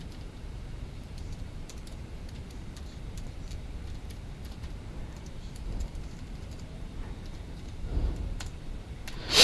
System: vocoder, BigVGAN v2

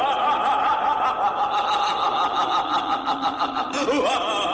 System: none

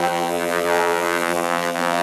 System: vocoder, BigVGAN v2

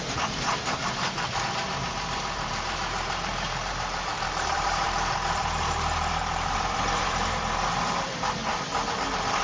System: vocoder, BigVGAN v2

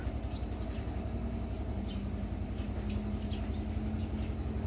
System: none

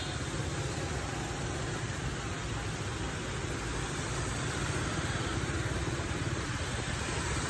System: none